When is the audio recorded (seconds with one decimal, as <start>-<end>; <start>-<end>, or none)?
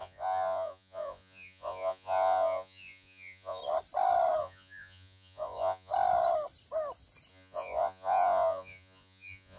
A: 3.6-4.4; 5.9-7.3